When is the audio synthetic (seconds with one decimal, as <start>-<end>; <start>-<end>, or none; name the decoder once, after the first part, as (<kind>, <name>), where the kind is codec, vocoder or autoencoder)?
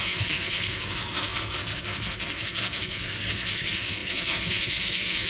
0.0-5.3 (codec, SNAC)